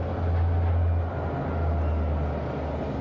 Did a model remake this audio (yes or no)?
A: no